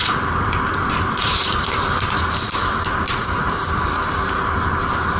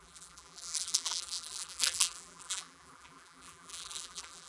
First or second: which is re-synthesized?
second